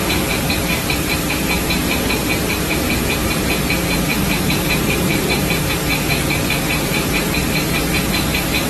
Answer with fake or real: fake